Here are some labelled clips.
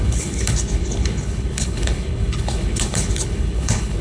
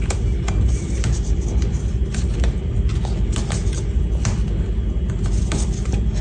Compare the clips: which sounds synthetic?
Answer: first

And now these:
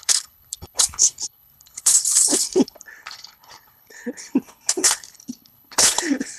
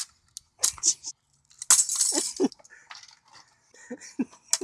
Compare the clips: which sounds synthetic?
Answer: first